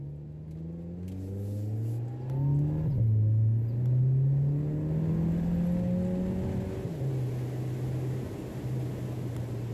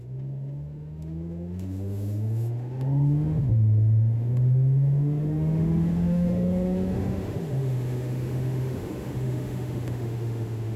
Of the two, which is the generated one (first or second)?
second